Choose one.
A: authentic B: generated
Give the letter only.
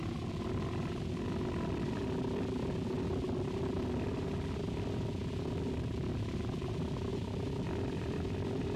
A